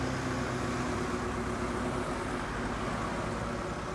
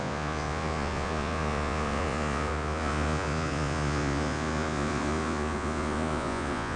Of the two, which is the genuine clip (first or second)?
first